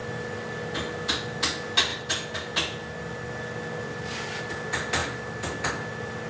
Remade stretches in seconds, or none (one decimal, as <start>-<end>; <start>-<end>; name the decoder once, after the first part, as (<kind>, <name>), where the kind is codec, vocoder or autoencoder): none